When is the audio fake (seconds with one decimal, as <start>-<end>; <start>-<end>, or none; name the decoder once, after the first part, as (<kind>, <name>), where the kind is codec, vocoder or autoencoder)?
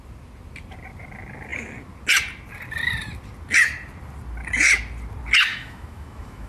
5.5-6.5 (autoencoder, DAC-VAE)